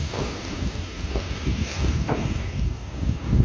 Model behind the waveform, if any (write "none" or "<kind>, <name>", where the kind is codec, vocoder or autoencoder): codec, DAC